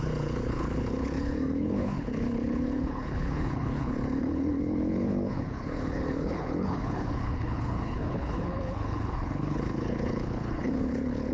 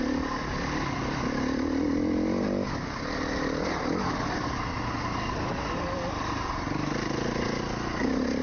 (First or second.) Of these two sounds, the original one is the second